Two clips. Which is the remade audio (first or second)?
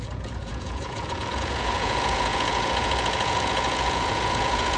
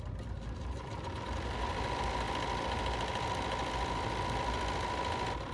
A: first